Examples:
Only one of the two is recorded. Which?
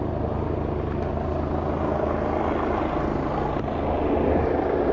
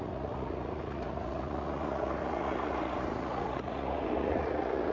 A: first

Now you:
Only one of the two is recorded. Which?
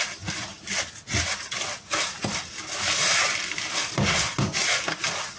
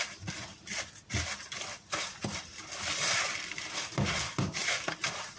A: first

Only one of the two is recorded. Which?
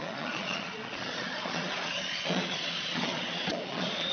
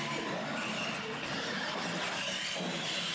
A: second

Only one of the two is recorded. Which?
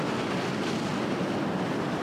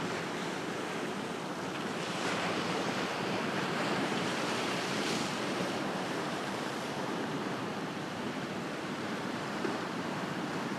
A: first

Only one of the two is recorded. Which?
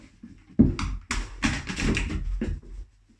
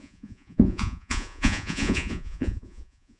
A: first